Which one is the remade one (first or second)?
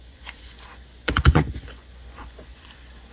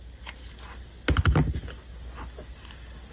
first